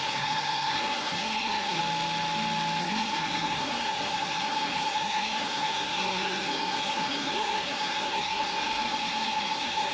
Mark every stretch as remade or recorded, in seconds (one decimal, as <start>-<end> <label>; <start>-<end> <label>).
0.0-1.8 remade; 1.8-2.8 recorded; 2.8-9.9 remade